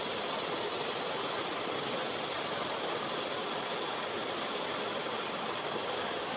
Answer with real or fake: real